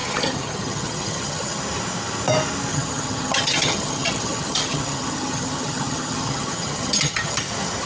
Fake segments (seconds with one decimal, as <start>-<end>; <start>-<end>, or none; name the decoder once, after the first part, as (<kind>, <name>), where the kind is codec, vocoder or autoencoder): 0.0-1.6 (vocoder, HiFi-GAN); 2.7-7.4